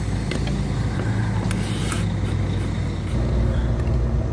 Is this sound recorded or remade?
recorded